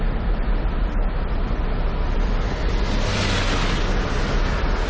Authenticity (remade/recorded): recorded